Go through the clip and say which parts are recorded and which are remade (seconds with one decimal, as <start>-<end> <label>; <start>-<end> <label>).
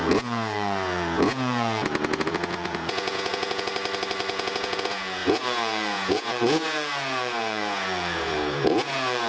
0.0-3.7 remade; 3.7-4.3 recorded; 4.3-9.3 remade